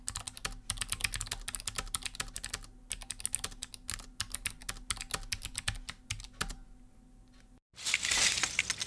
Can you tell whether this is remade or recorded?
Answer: recorded